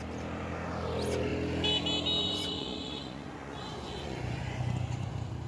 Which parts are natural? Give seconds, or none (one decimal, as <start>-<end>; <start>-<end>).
0.0-2.2; 5.1-5.5